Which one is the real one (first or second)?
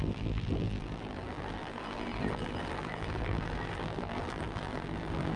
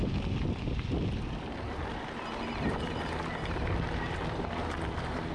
second